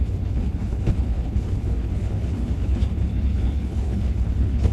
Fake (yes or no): yes